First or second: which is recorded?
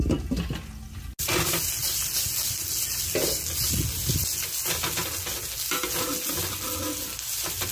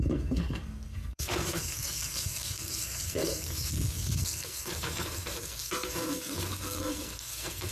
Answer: first